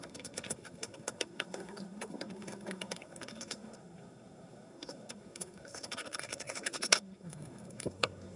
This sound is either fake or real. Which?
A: fake